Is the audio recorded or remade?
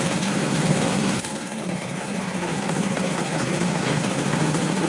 remade